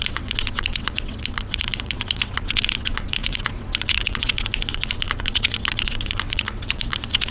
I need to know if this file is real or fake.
fake